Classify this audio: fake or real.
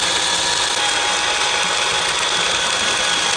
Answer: real